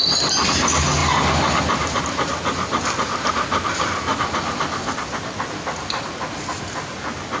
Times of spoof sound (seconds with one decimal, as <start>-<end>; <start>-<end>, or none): none